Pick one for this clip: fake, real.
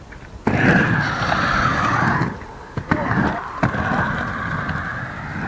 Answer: real